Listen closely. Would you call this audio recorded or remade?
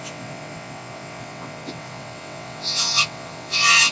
remade